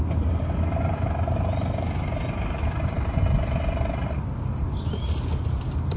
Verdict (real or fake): real